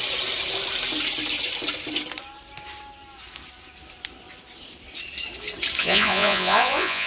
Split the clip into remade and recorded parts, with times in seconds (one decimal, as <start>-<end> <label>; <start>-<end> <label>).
0.0-5.8 recorded; 5.8-7.1 remade